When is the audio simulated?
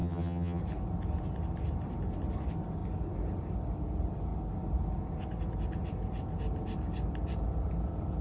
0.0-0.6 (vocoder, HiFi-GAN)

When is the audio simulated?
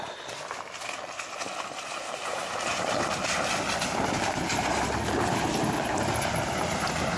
none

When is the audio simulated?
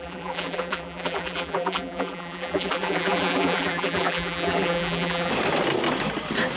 0.0-5.3 (vocoder, BigVGAN v2)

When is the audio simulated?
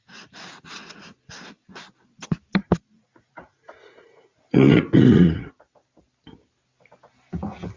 2.6-5.5 (vocoder, Vocos)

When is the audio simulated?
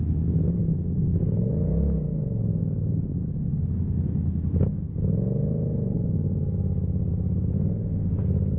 0.6-1.5 (codec, DAC); 2.6-4.8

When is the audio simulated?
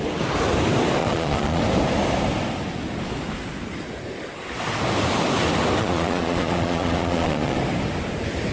1.0-1.6 (vocoder, Vocos); 5.8-7.6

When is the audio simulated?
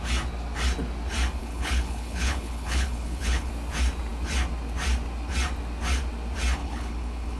1.4-3.5 (codec, HILCodec); 6.6-7.4